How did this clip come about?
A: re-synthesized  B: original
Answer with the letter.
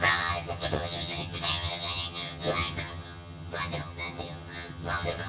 A